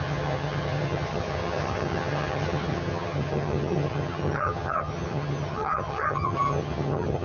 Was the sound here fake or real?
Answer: fake